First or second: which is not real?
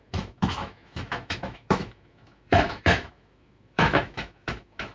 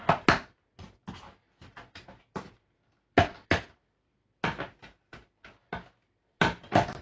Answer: first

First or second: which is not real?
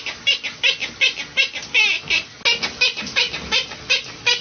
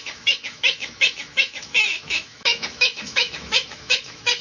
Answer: second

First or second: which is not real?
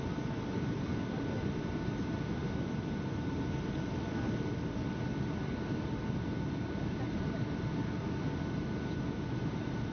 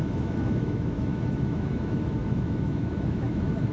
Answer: second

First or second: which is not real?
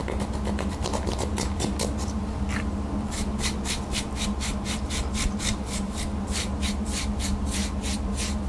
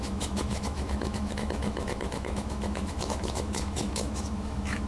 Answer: second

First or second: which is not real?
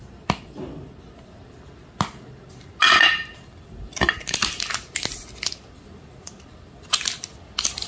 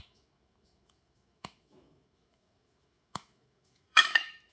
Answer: second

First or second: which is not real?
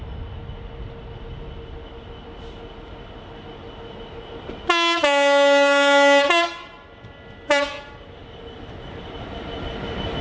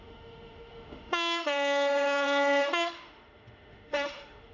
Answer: second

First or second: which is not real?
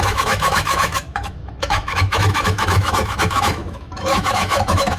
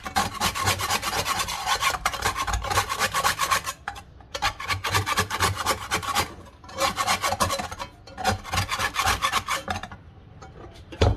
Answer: first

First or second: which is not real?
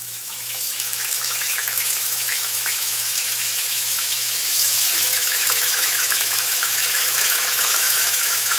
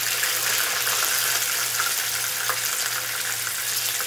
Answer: first